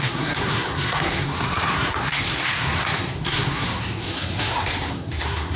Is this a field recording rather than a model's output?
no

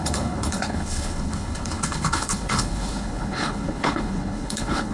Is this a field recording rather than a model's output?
no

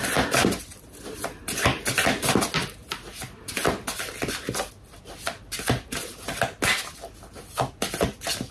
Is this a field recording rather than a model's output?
yes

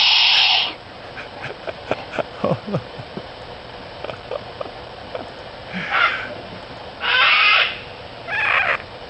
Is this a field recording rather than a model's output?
yes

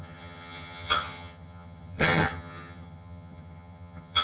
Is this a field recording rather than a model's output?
no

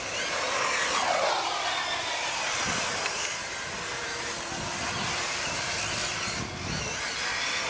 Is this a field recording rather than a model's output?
yes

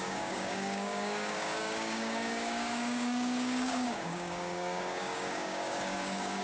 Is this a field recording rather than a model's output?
no